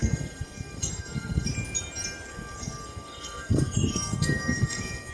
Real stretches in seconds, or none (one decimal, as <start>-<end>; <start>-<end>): 1.5-2.3